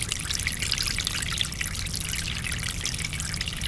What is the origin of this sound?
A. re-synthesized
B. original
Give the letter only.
B